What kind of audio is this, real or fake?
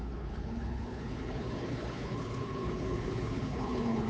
fake